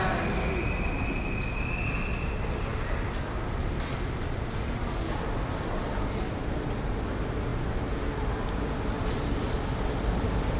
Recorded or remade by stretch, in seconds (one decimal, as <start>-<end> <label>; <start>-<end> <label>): 0.0-10.6 recorded